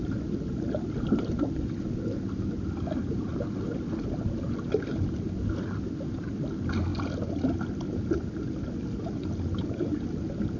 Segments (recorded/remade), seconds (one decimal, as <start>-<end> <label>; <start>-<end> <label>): 0.0-10.6 recorded